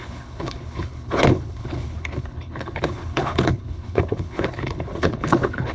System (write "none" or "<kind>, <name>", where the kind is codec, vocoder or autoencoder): codec, HILCodec